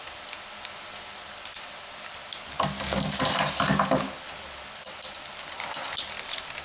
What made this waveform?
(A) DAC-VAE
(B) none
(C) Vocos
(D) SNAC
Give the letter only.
B